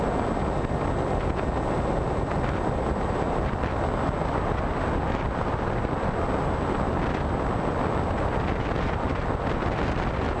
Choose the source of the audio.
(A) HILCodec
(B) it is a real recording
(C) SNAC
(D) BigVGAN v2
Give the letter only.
B